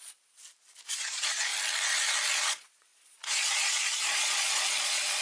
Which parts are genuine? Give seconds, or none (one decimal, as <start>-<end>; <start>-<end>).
0.4-1.0; 1.5-2.5